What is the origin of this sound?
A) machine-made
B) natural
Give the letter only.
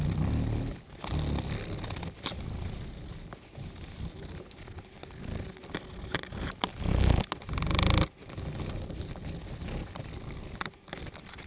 B